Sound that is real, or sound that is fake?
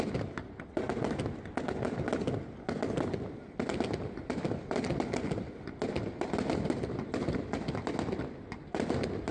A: real